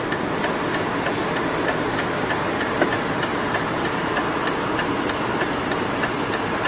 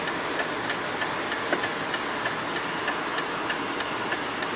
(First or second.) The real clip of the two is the second